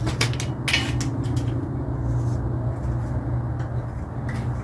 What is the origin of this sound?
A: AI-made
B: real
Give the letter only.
B